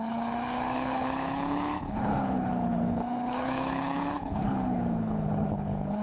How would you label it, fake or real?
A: fake